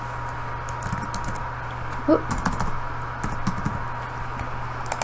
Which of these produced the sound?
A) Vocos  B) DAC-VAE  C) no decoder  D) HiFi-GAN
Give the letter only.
C